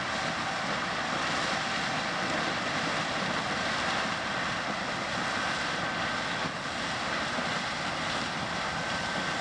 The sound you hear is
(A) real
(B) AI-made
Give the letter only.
B